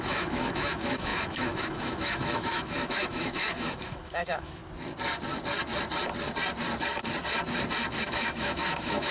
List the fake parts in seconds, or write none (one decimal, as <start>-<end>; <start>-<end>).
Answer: 0.0-4.6; 8.0-9.1